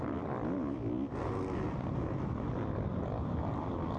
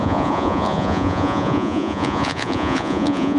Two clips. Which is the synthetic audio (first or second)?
second